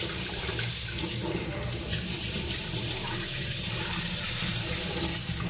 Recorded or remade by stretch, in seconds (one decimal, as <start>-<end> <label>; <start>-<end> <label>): 0.0-4.9 remade; 4.9-5.5 recorded